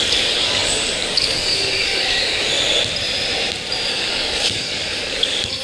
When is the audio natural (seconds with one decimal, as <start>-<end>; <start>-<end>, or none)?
2.5-3.9